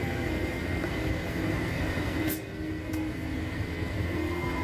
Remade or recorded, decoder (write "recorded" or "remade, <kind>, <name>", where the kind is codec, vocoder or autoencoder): remade, codec, SNAC